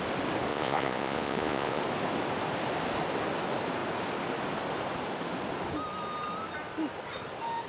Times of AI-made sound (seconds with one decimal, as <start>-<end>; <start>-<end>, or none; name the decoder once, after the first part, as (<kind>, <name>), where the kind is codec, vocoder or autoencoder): 0.5-1.8 (vocoder, Vocos)